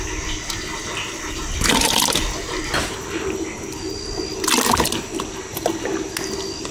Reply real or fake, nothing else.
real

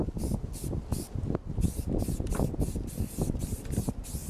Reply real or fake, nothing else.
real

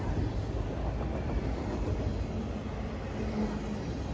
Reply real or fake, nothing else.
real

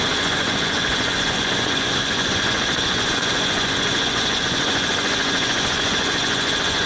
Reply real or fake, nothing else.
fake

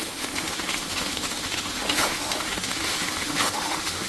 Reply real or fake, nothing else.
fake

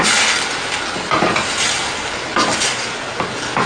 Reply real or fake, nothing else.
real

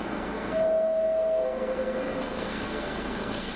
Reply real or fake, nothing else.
fake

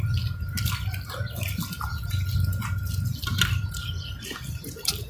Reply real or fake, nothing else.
real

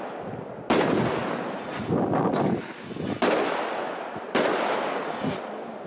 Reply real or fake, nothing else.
real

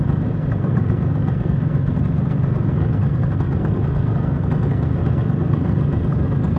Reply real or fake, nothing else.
fake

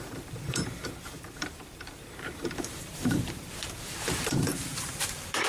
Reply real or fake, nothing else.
fake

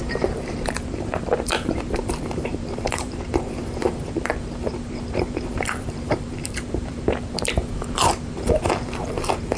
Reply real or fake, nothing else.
fake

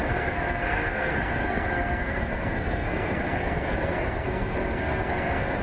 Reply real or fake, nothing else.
fake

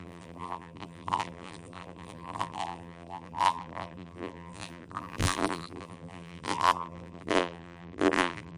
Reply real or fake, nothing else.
fake